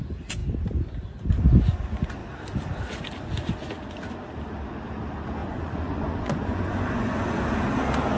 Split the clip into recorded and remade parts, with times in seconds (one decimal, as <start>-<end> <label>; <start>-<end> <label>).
0.0-5.4 recorded; 5.4-7.4 remade; 7.4-8.2 recorded